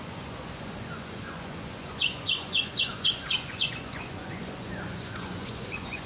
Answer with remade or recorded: remade